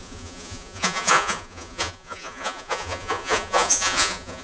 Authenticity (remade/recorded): remade